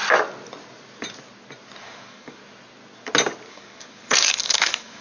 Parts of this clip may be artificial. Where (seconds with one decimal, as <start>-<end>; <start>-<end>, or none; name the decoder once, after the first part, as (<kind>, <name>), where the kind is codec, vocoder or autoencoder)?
1.8-2.4 (codec, DAC); 3.5-5.0